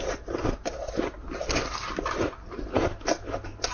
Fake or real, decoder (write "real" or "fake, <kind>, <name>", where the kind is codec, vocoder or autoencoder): real